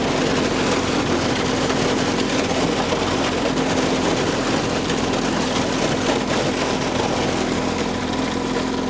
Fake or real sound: real